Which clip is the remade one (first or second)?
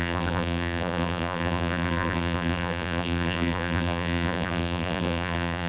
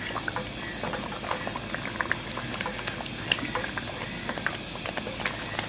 first